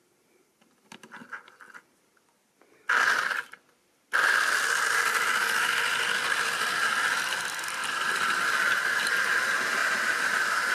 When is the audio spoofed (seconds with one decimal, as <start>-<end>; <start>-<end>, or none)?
7.8-9.1; 9.8-10.7